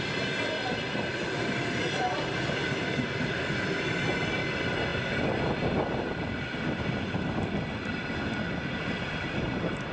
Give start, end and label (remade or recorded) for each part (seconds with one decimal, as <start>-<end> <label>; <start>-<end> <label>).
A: 0.0-9.9 recorded